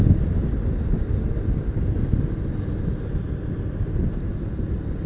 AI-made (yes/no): no